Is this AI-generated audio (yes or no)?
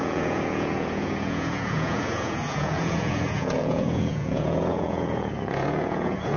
yes